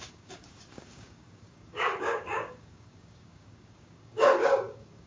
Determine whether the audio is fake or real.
fake